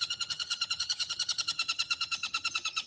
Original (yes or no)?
no